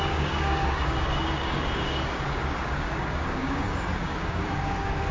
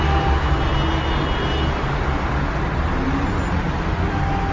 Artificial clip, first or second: first